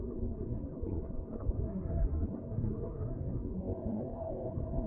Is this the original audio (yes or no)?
no